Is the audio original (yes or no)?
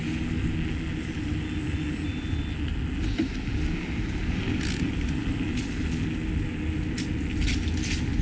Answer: yes